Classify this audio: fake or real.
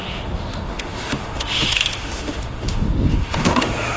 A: fake